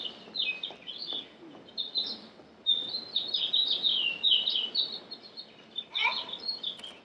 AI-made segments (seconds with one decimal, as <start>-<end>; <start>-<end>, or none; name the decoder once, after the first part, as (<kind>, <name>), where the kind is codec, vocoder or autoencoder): 3.9-7.0 (vocoder, BigVGAN v2)